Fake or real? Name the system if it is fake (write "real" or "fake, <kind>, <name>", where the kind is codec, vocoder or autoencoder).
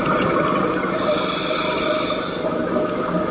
real